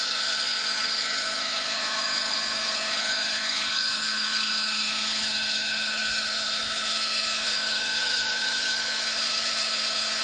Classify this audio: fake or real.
fake